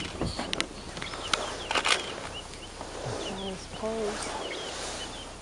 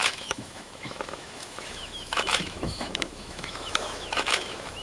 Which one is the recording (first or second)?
first